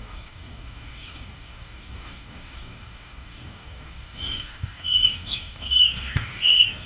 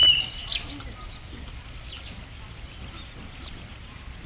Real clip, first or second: second